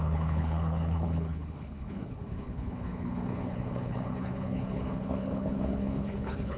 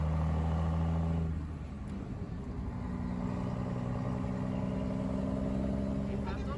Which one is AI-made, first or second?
first